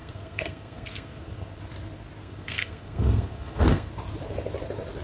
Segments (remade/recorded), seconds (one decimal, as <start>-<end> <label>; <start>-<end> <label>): 0.0-1.6 remade; 1.6-2.2 recorded; 2.2-3.9 remade; 3.9-5.0 recorded